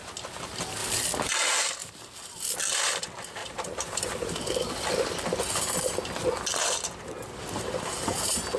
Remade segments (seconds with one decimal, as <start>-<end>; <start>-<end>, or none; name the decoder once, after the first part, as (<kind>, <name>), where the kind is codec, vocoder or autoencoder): 0.8-1.3 (vocoder, BigVGAN v2); 1.8-2.6; 3.4-4.7